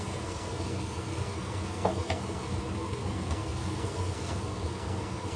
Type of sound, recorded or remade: remade